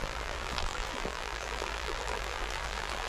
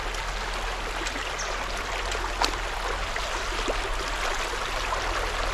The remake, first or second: first